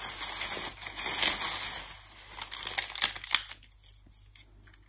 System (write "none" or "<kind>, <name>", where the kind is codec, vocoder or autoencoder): none